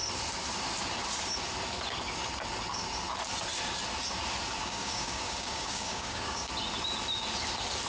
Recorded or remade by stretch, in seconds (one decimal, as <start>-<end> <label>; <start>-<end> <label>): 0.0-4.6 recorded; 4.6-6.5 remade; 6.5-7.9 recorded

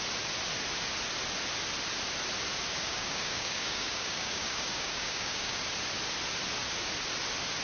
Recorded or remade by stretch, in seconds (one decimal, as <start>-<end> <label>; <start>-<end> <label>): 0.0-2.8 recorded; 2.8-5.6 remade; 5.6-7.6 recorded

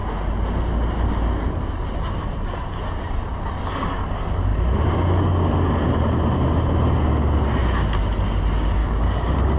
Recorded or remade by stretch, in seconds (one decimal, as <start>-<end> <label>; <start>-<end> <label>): 0.0-8.8 recorded; 8.8-9.6 remade

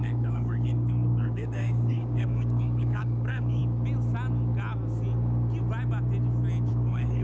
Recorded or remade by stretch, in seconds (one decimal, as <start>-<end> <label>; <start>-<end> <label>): 0.0-3.6 remade; 3.6-6.7 recorded; 6.7-7.2 remade